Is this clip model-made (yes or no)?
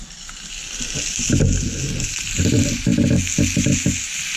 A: no